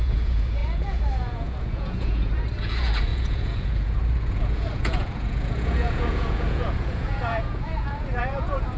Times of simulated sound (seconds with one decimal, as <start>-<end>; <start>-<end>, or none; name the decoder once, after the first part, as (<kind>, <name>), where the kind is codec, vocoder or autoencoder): 0.0-8.8 (vocoder, Vocos)